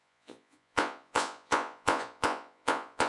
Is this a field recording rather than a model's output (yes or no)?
no